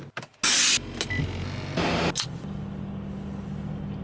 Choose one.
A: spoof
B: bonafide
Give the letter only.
B